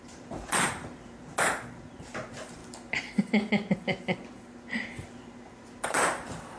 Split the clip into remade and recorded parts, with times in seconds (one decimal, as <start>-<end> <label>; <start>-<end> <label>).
0.0-1.3 remade; 1.3-1.8 recorded; 1.8-2.6 remade; 2.6-5.9 recorded; 5.9-6.6 remade